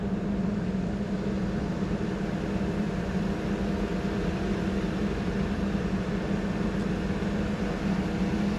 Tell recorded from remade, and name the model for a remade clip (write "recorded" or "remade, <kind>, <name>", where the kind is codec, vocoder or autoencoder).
recorded